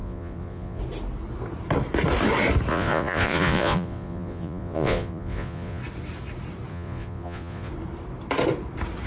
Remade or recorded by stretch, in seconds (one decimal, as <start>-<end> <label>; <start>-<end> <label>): 0.0-0.8 remade; 0.8-2.7 recorded; 2.7-5.8 remade; 5.8-6.7 recorded; 6.7-7.7 remade; 7.7-9.1 recorded